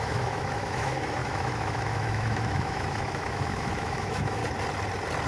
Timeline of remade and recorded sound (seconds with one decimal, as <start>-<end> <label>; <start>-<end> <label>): 0.0-4.4 remade; 4.4-5.3 recorded